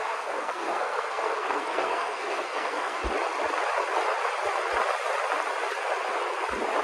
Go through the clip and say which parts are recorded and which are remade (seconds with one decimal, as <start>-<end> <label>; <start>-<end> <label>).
0.0-3.0 remade; 3.0-6.8 recorded